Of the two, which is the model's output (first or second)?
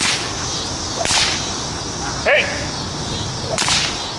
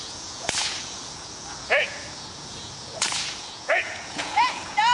second